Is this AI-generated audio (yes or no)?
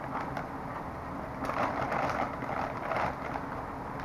no